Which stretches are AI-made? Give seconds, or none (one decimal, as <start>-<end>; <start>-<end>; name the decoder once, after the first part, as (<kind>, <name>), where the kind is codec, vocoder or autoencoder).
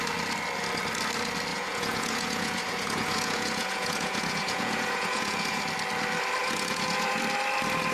1.5-5.6 (vocoder, Vocos); 6.4-7.2